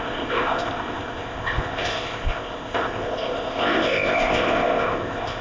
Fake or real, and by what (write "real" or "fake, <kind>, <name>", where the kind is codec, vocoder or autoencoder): fake, codec, ZipCodec